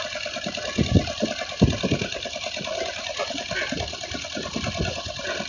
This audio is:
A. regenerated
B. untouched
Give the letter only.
B